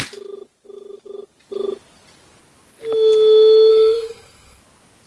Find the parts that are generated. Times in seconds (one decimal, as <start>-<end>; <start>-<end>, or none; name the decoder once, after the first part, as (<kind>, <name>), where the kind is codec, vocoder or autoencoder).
3.7-4.6 (codec, SNAC)